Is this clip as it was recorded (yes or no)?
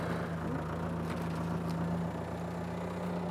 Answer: yes